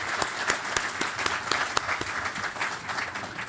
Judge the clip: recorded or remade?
recorded